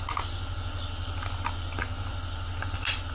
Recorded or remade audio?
recorded